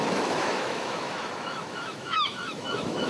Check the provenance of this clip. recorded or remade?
remade